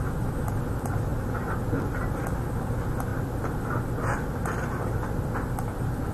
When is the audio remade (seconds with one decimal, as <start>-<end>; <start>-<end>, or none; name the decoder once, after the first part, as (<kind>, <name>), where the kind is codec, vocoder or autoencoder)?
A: none